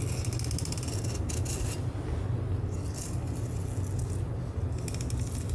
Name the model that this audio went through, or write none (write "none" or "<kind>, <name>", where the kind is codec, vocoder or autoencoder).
none